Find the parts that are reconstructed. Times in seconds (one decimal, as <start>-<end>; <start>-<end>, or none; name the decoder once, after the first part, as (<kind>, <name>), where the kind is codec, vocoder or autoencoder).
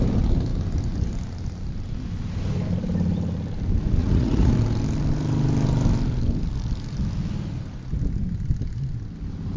4.0-4.5 (vocoder, Vocos)